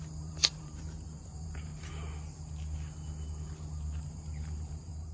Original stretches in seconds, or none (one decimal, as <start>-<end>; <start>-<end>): 1.7-4.0